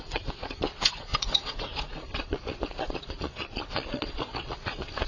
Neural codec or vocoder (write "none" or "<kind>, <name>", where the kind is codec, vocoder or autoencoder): vocoder, Vocos